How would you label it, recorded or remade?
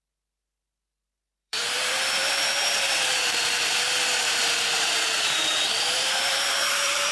remade